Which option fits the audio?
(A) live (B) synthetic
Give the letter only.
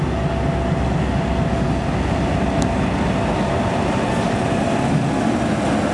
A